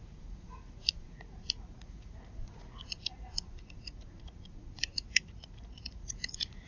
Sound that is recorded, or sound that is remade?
remade